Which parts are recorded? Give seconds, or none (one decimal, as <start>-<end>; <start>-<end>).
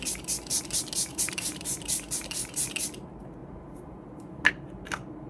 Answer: 0.0-1.1; 2.1-3.4; 4.0-5.3